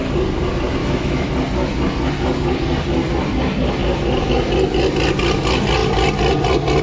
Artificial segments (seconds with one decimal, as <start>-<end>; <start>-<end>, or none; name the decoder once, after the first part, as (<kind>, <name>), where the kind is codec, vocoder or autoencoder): 0.8-1.3 (autoencoder, DAC-VAE)